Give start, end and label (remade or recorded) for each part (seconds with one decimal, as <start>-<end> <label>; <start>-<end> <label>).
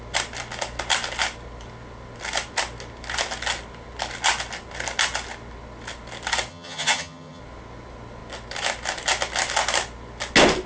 0.0-6.5 recorded; 6.5-7.4 remade; 7.4-10.7 recorded